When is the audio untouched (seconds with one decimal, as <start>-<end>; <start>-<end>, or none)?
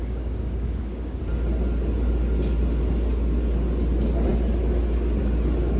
1.2-5.8